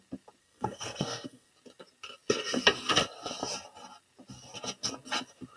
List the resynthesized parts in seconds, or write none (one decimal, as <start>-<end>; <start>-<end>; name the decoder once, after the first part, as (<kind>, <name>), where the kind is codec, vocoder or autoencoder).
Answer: 0.4-1.5 (codec, SNAC)